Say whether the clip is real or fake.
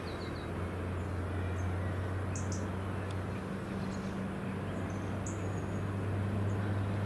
real